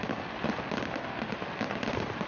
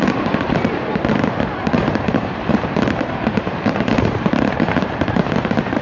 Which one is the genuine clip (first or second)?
first